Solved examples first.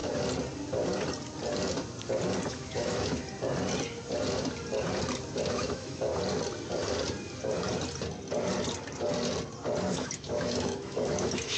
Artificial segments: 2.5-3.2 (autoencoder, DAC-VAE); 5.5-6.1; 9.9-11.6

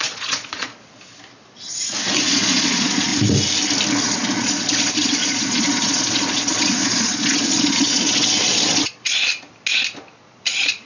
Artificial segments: 0.0-0.7 (vocoder, Vocos); 2.2-3.1; 4.0-9.3; 10.1-10.9

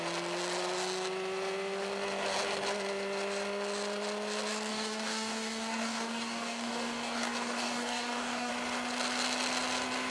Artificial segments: 4.7-8.5 (codec, DAC)